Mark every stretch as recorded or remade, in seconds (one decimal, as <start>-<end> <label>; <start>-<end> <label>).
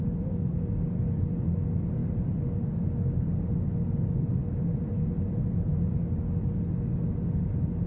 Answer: 0.0-7.9 recorded